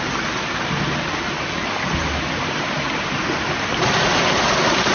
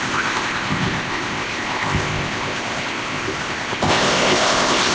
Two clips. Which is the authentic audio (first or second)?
first